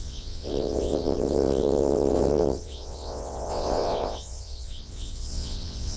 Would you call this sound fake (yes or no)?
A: yes